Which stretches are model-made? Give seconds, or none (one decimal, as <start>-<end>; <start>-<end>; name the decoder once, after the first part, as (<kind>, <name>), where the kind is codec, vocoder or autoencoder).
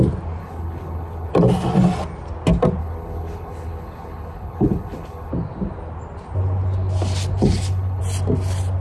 0.4-1.3 (codec, HILCodec); 2.8-5.3; 7.4-8.0